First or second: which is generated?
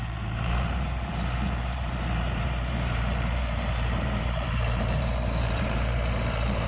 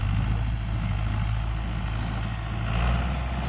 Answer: first